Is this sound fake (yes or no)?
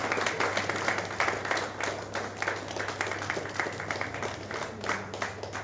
no